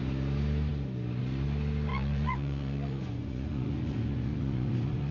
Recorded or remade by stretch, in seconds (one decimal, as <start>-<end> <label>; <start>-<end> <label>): 0.0-1.9 recorded; 1.9-5.1 remade